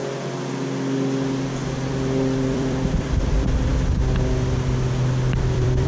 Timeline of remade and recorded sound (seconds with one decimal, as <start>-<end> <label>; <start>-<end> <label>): 0.0-1.7 recorded; 1.7-3.7 remade; 3.7-5.4 recorded; 5.4-5.9 remade